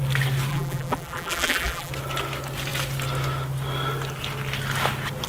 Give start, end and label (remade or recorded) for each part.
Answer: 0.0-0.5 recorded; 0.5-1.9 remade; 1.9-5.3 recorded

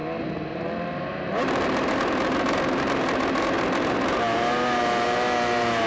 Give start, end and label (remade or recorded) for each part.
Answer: 0.0-1.1 recorded; 1.1-5.9 remade